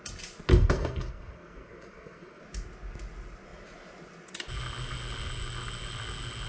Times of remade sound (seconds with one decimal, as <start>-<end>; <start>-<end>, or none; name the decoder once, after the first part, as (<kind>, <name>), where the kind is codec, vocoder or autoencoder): 0.5-2.4 (codec, SNAC)